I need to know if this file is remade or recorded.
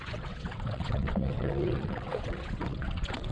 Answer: remade